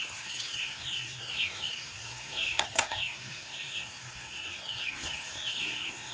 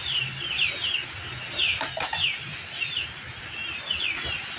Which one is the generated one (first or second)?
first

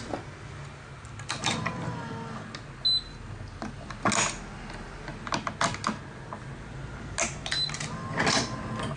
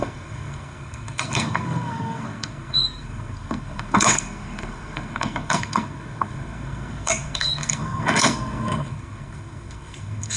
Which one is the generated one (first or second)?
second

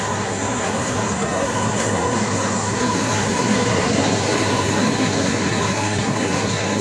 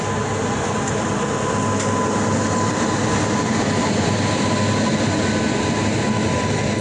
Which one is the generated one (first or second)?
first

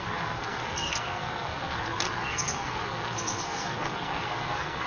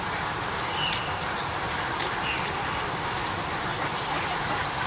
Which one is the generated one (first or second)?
first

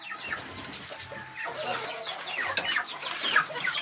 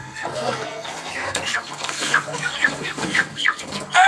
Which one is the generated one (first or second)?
second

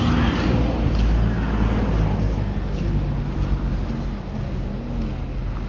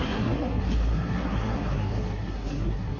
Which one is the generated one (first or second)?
second